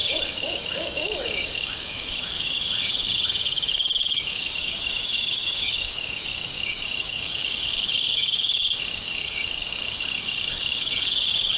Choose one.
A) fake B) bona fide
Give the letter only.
A